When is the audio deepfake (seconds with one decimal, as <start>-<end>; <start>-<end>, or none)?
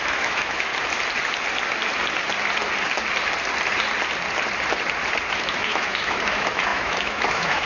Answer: 0.0-0.7; 5.3-7.7